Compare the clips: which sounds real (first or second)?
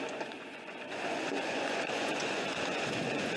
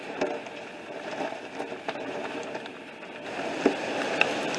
second